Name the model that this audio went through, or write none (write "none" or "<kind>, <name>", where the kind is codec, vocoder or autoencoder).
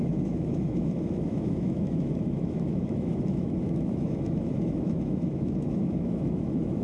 autoencoder, DAC-VAE